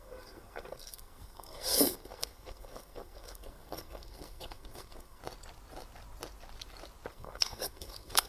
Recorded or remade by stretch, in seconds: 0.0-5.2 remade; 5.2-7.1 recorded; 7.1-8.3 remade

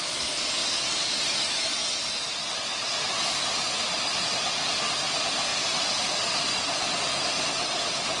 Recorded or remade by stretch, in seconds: 0.0-8.2 recorded

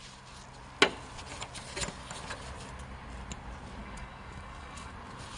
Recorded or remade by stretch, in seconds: 0.0-3.8 recorded; 3.8-4.9 remade; 4.9-5.4 recorded

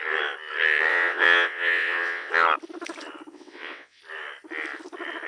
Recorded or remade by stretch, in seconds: 0.0-0.9 recorded; 0.9-2.3 remade; 2.3-3.3 recorded; 3.3-4.0 remade; 4.0-5.3 recorded